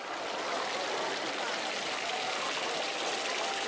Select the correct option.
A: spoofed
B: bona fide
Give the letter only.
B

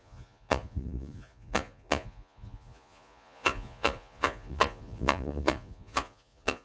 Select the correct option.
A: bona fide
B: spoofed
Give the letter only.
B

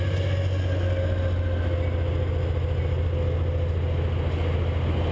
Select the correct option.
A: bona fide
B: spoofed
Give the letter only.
A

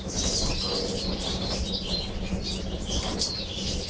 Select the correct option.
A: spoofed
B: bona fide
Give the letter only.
B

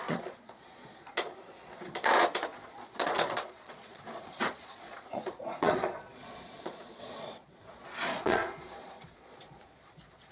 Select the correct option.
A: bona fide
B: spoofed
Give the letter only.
B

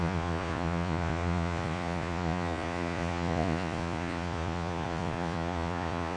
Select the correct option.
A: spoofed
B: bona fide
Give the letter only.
A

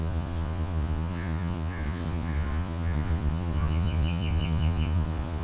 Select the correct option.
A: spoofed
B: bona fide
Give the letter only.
A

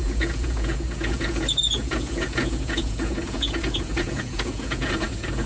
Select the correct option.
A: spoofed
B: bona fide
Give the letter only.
A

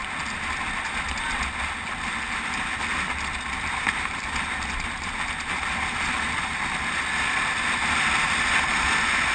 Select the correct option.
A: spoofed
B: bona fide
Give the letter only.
B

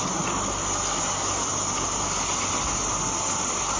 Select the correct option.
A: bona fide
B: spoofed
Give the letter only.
A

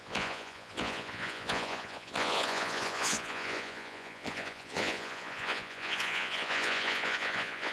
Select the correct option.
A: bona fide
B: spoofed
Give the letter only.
B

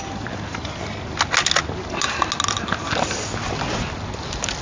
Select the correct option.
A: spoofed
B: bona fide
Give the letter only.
B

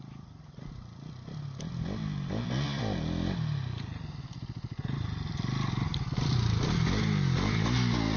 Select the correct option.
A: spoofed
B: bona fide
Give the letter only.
B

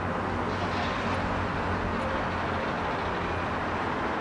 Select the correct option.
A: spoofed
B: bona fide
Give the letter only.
B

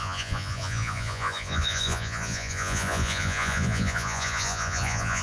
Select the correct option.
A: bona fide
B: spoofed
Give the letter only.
B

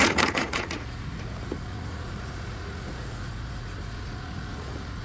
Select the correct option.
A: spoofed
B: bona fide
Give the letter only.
A